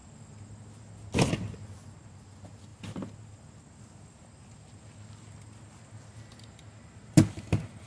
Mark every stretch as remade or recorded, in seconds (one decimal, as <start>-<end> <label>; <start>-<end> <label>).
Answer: 0.0-7.9 recorded